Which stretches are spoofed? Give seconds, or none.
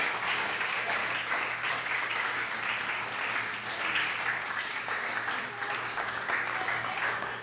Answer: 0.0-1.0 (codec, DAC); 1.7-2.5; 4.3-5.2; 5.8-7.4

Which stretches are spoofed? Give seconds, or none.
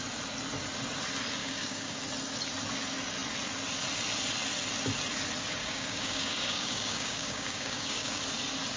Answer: 1.4-2.0 (codec, DAC); 5.6-8.2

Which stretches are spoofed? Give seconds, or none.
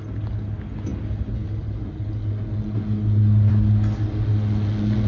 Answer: none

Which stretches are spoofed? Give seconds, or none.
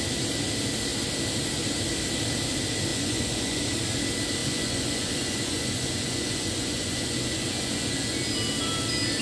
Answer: 2.9-3.6 (vocoder, Vocos); 4.4-8.3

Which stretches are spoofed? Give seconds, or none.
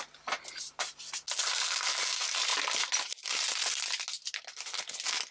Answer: none